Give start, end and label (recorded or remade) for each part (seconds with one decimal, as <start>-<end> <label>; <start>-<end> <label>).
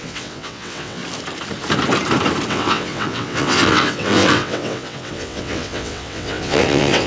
0.0-1.0 remade; 1.0-2.5 recorded; 2.5-7.1 remade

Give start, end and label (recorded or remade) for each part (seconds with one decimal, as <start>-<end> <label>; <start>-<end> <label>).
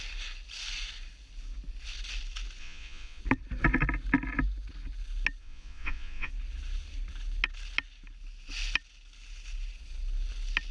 0.0-2.6 recorded; 2.6-3.2 remade; 3.2-5.4 recorded; 5.4-6.3 remade; 6.3-10.7 recorded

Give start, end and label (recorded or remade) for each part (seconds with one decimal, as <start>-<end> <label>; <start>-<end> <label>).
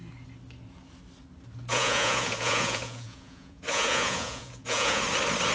0.0-1.7 recorded; 1.7-5.0 remade; 5.0-5.5 recorded